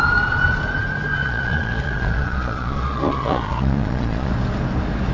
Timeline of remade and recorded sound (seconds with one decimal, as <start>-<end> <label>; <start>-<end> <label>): 0.0-1.2 recorded; 1.2-4.3 remade; 4.3-5.1 recorded

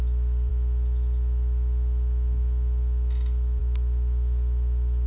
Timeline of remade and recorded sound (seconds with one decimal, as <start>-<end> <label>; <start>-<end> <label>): 0.0-5.1 recorded